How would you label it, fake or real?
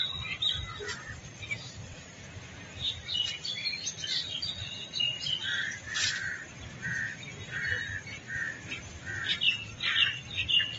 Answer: real